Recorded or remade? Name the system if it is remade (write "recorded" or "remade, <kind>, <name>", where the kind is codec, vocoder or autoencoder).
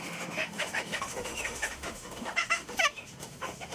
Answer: remade, autoencoder, DAC-VAE